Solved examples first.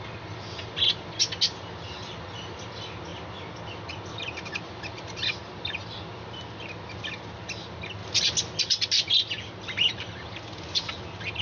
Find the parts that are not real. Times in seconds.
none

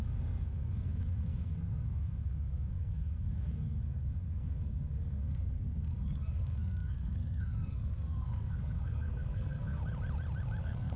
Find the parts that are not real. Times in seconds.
0.0-9.8 (codec, SNAC); 10.6-11.0

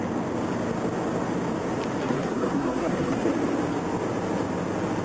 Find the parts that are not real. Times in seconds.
2.0-3.3 (codec, SNAC)

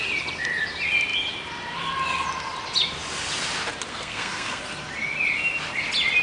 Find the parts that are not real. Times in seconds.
3.9-4.6 (codec, SNAC)

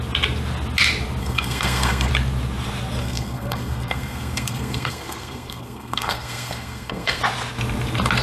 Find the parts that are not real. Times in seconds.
1.2-2.1 (codec, SNAC); 3.0-7.2